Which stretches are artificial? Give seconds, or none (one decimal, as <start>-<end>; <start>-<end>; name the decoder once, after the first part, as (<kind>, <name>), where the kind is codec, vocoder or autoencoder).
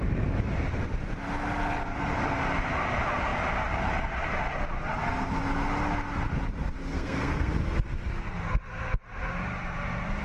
6.9-7.5 (codec, SNAC)